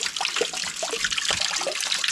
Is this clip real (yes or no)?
yes